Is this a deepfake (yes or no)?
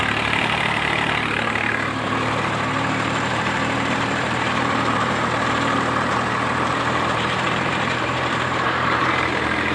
yes